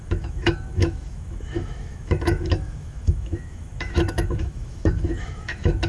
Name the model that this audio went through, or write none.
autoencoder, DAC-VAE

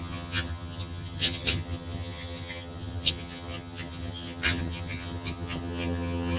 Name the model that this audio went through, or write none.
vocoder, HiFi-GAN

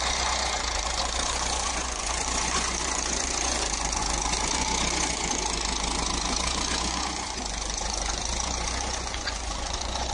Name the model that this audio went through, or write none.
vocoder, Vocos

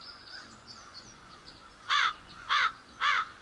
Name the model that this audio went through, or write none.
vocoder, Vocos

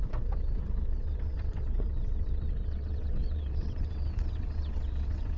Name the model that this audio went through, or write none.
vocoder, WaveNeXt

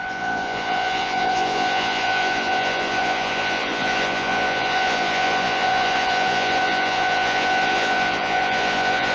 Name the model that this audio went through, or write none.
vocoder, Vocos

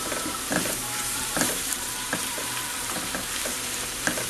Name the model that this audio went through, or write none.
vocoder, BigVGAN v2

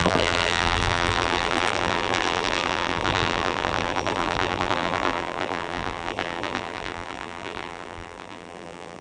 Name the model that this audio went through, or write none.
vocoder, BigVGAN v2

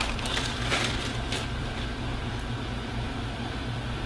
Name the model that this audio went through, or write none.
vocoder, BigVGAN v2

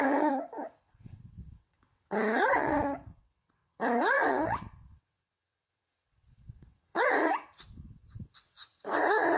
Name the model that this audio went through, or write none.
vocoder, WaveNeXt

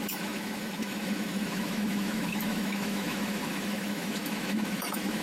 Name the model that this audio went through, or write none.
autoencoder, DAC-VAE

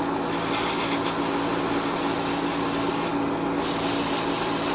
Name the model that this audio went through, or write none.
none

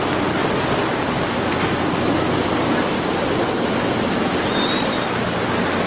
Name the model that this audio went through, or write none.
none